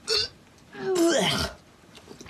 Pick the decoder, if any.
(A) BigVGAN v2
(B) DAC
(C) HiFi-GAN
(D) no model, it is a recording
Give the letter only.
D